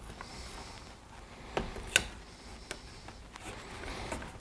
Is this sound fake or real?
real